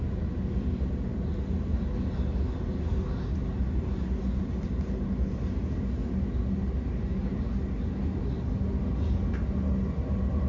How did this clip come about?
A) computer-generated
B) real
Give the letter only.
B